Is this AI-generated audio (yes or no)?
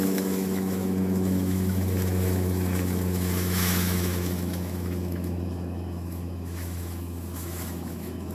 yes